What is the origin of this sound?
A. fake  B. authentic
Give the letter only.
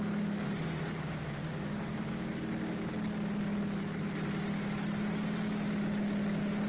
B